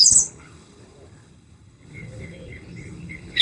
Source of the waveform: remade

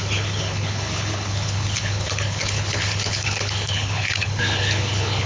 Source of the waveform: remade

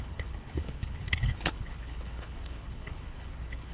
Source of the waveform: remade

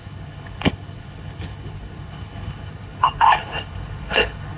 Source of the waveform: remade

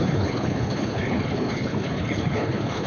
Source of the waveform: remade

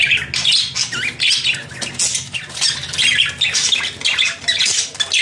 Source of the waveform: recorded